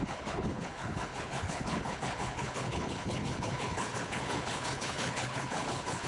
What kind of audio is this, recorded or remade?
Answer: remade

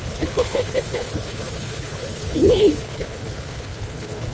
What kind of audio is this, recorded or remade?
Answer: remade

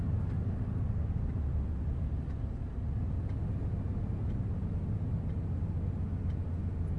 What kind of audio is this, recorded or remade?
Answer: recorded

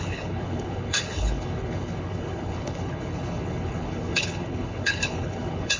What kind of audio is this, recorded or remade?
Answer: remade